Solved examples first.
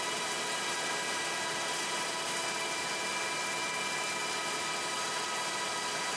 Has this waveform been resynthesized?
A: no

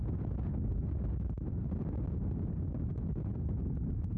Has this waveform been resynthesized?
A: no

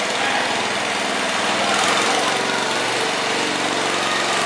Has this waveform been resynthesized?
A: no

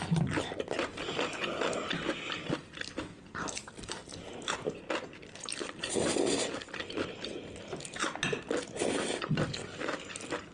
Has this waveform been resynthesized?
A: no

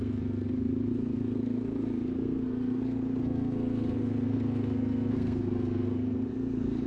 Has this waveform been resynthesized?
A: yes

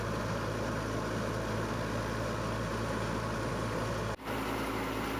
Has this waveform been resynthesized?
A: no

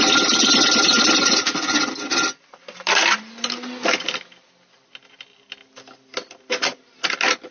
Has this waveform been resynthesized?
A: no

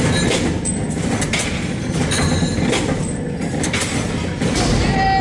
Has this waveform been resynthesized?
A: no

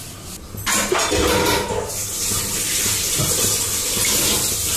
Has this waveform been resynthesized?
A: no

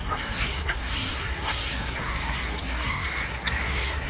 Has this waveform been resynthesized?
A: yes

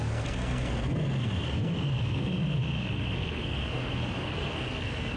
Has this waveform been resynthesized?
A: yes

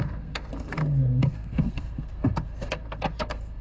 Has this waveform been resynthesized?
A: yes